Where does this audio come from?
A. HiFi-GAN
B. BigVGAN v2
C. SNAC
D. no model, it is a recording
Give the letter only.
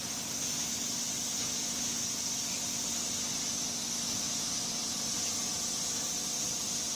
D